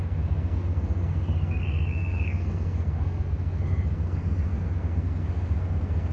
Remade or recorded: remade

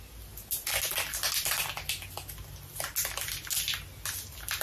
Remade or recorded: recorded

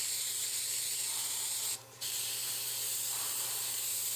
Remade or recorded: remade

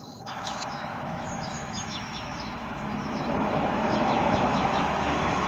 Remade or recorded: remade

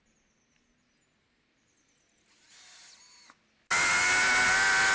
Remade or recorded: recorded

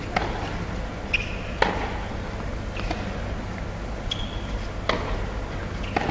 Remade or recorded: recorded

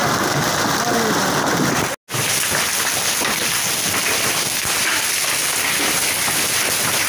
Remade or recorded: recorded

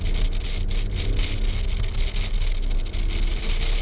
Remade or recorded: recorded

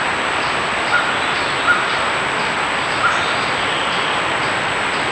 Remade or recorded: recorded